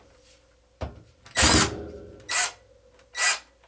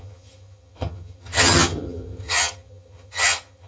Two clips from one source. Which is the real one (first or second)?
first